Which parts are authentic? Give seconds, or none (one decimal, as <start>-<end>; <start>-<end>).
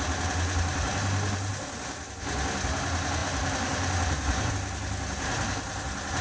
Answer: 0.0-0.7; 1.5-3.2; 4.5-6.2